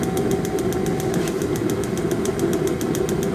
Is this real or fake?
real